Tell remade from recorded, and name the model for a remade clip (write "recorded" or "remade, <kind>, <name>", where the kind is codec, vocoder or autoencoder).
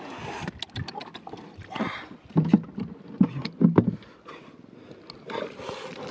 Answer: recorded